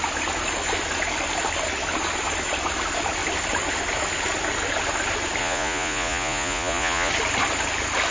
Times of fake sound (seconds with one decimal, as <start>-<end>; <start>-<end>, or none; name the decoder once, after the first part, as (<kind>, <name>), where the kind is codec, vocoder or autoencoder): 5.4-7.1 (vocoder, Vocos)